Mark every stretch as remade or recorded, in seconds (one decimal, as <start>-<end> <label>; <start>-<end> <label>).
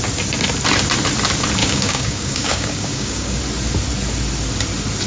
0.0-1.6 recorded; 1.6-3.4 remade; 3.4-5.1 recorded